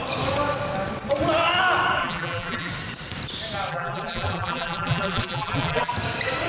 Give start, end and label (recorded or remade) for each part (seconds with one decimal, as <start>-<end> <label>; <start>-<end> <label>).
0.0-2.0 recorded; 2.0-2.7 remade; 2.7-3.7 recorded; 3.7-5.9 remade; 5.9-6.5 recorded